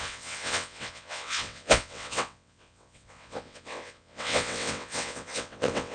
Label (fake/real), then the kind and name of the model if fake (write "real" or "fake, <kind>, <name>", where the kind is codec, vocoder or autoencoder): fake, vocoder, WaveNeXt